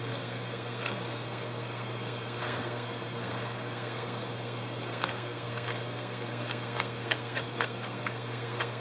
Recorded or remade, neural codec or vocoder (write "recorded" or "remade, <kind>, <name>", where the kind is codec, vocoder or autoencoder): remade, codec, SNAC